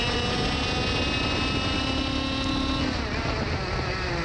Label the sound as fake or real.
real